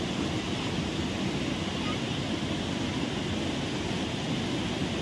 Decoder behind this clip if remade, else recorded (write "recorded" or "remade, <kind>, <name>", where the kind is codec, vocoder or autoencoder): recorded